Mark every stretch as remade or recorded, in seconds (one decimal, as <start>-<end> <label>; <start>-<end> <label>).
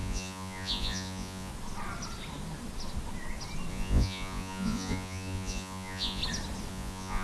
0.0-1.5 remade; 1.5-3.7 recorded; 3.7-6.2 remade; 6.2-6.7 recorded; 6.7-7.2 remade